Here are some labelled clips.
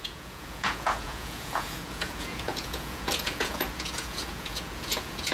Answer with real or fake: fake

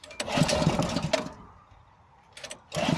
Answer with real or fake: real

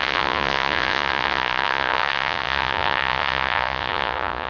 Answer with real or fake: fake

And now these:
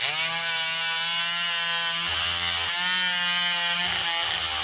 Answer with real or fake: real